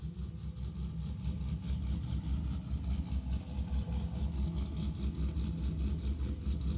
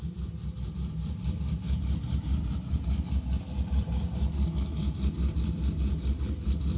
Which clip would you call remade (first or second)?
second